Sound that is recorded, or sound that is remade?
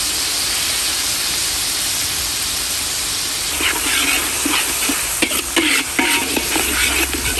recorded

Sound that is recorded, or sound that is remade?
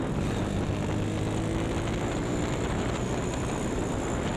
recorded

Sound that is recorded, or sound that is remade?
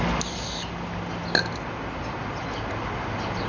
recorded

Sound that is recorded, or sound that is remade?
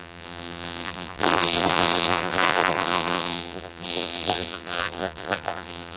remade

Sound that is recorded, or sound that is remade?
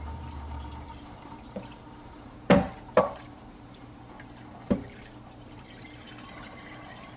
remade